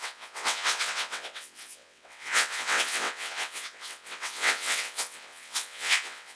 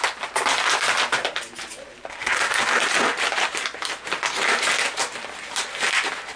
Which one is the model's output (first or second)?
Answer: first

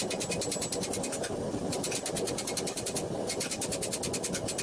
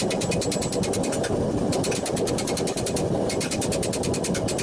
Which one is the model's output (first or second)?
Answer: second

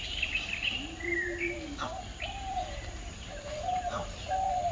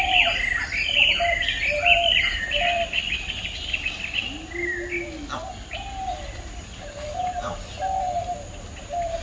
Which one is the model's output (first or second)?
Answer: first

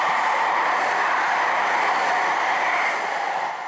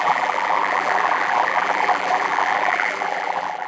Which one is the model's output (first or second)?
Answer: second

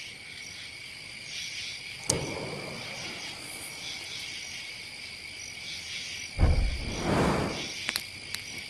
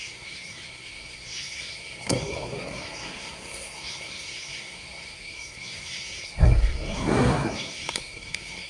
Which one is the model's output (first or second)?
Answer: second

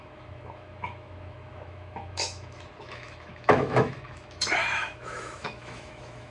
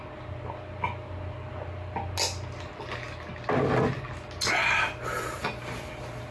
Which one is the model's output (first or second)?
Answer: first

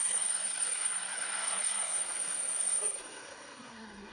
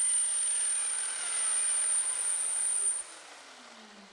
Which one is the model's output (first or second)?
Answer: first